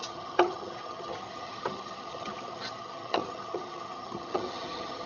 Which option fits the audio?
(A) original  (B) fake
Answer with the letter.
B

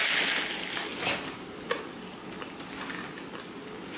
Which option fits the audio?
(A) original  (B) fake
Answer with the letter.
A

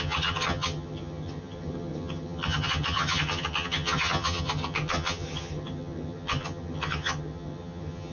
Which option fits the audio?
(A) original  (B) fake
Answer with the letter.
B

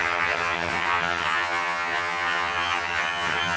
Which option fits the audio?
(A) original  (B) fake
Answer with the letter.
B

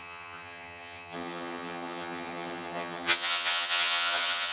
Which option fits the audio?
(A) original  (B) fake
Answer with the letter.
B